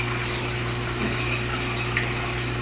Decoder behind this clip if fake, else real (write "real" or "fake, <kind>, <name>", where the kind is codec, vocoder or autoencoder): real